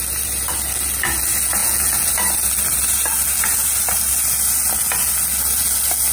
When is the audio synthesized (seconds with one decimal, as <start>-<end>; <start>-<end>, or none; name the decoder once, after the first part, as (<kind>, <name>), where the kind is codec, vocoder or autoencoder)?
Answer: 1.6-2.1 (vocoder, Vocos)